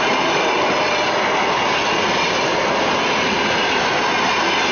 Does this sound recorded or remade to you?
recorded